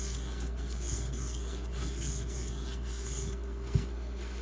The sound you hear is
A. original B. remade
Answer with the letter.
B